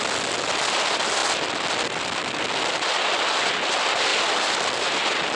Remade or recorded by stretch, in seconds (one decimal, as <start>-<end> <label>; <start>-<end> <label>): 0.0-5.4 recorded